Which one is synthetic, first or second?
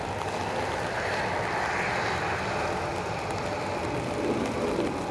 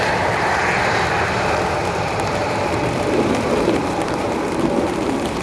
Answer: second